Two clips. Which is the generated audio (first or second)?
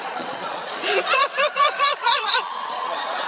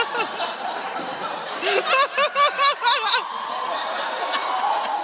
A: first